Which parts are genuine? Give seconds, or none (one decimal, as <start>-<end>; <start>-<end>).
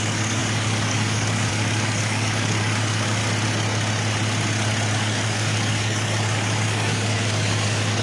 3.2-4.9